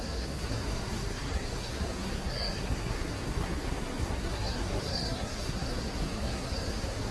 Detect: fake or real fake